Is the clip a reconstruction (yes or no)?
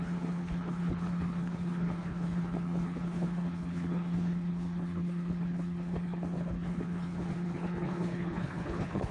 yes